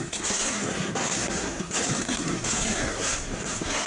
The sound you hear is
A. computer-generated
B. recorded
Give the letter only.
A